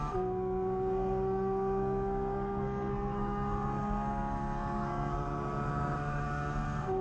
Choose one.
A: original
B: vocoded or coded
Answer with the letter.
B